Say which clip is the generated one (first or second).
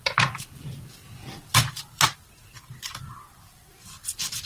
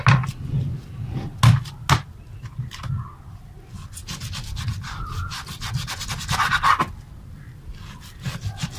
first